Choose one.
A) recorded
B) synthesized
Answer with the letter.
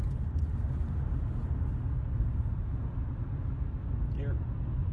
A